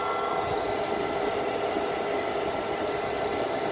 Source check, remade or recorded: recorded